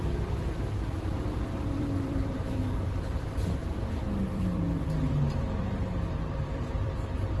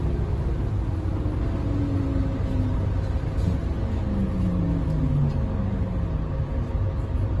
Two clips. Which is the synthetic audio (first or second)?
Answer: first